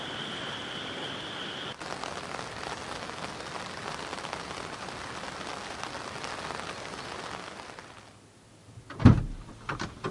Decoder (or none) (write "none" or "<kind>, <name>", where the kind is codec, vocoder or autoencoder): none